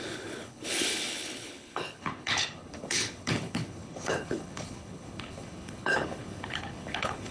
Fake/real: fake